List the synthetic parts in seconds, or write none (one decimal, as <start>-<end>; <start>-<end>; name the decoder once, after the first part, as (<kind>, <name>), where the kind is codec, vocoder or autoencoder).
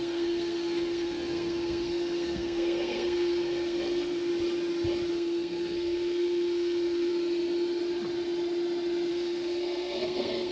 0.0-4.3 (codec, SNAC); 5.1-7.1; 9.1-10.5